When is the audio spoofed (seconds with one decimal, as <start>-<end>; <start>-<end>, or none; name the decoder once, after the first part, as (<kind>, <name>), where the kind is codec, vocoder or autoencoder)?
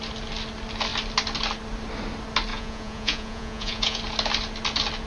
2.5-4.0 (vocoder, Vocos)